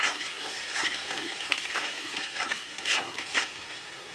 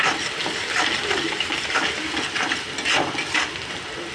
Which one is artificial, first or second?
first